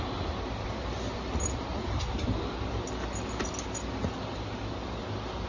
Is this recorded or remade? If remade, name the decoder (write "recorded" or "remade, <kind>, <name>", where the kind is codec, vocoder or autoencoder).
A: recorded